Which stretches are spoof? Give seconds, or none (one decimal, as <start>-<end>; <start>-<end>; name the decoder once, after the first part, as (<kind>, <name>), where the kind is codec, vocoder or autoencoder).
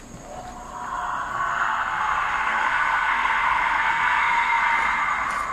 1.3-4.6 (codec, SNAC)